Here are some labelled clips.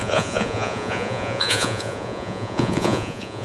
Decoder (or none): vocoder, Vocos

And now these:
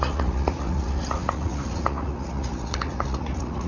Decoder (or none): vocoder, Vocos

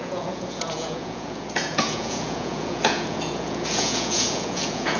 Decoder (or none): vocoder, Vocos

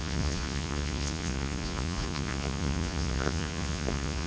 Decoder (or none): vocoder, Vocos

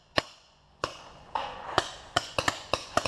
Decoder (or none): vocoder, Vocos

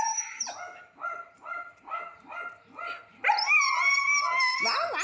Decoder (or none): none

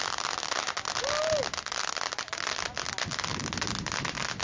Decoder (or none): none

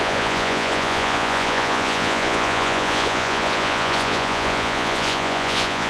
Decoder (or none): vocoder, Vocos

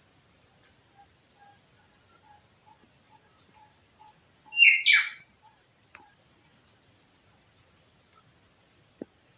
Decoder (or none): none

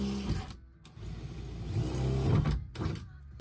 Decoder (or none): none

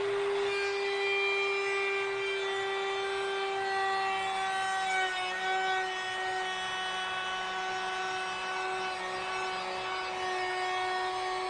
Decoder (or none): none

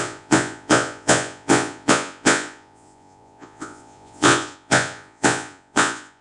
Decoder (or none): vocoder, Vocos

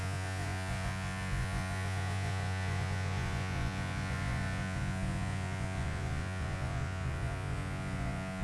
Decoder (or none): vocoder, Vocos